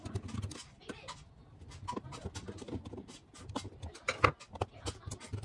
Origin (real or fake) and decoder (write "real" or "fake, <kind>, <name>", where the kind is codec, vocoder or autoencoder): real